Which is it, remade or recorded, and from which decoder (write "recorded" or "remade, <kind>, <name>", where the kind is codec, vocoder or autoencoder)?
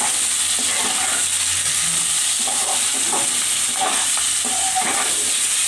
recorded